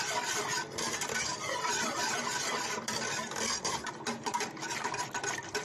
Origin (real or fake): fake